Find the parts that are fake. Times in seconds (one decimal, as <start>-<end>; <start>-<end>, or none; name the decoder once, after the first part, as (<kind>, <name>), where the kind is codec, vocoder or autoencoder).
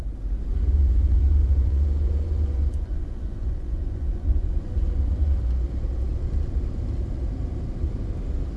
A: 0.5-5.4 (vocoder, Vocos)